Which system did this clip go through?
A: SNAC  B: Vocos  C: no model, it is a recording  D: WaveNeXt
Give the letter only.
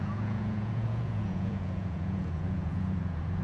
B